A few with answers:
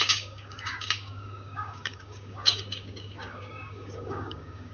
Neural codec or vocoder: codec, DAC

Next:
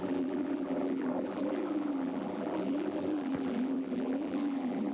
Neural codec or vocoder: vocoder, BigVGAN v2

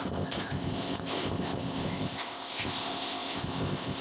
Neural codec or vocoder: codec, ZipCodec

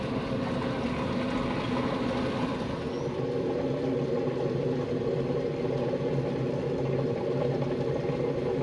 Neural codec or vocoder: none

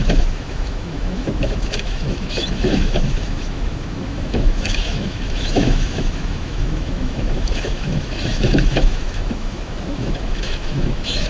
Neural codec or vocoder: autoencoder, DAC-VAE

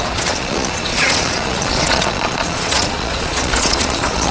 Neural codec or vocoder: vocoder, Vocos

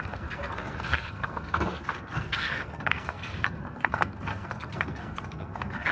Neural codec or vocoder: codec, SNAC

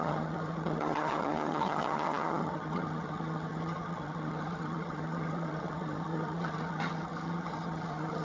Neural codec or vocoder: vocoder, HiFi-GAN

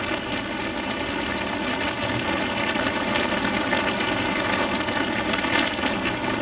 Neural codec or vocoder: none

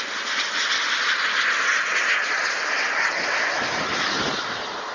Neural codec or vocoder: none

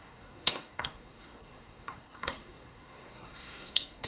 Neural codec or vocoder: codec, SNAC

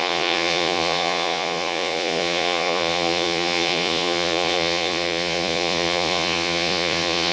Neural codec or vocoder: vocoder, Vocos